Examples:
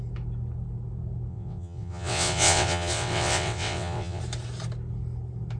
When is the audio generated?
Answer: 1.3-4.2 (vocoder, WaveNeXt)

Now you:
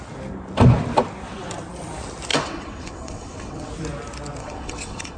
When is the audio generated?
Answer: 2.3-3.7 (vocoder, WaveNeXt); 4.4-5.2

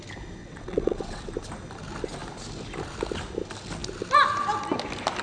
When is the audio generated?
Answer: 0.4-1.3 (vocoder, WaveNeXt)